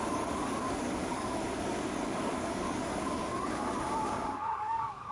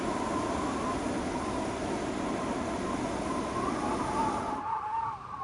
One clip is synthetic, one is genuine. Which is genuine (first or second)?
second